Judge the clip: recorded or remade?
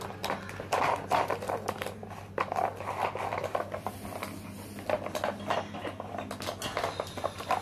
recorded